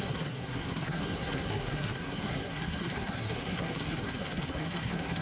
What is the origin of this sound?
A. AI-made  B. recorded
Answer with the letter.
A